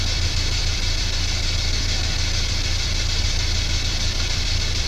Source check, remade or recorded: remade